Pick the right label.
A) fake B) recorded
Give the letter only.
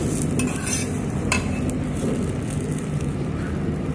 B